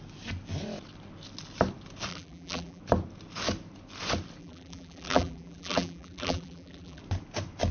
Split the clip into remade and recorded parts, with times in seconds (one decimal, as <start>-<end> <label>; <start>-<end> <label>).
0.0-2.1 recorded; 2.1-2.8 remade; 2.8-4.4 recorded; 4.4-7.0 remade; 7.0-7.7 recorded